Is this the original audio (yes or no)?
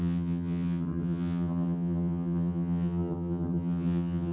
no